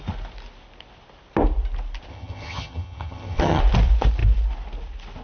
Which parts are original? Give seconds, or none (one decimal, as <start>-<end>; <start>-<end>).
0.0-2.1; 3.6-5.2